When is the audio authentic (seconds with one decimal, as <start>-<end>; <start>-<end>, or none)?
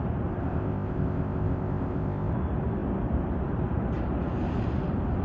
0.0-0.4; 2.3-5.2